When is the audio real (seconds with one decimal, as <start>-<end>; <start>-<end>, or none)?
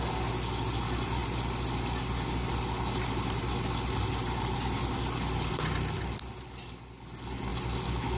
0.0-8.2